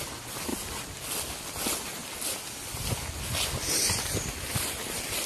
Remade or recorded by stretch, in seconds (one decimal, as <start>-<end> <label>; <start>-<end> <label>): 0.0-0.5 recorded; 0.5-1.3 remade; 1.3-2.0 recorded; 2.0-3.2 remade; 3.2-5.3 recorded